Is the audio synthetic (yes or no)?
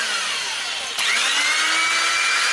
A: no